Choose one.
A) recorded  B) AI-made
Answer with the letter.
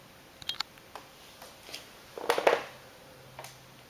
A